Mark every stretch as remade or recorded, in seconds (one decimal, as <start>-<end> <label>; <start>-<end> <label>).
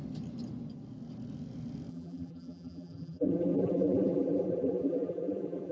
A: 0.0-1.9 recorded; 1.9-5.7 remade